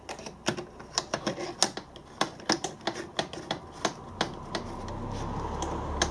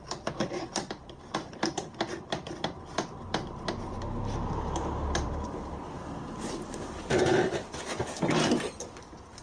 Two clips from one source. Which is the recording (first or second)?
first